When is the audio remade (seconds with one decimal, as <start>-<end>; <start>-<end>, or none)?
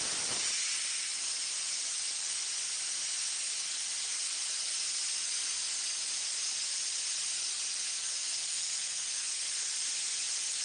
7.9-9.5